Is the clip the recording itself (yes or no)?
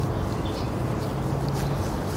yes